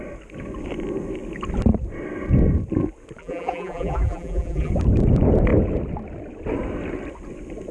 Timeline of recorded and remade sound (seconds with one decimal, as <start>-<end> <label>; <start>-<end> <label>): 0.0-3.2 recorded; 3.2-4.7 remade; 4.7-7.7 recorded